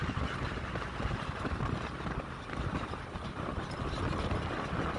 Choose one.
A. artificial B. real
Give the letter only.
B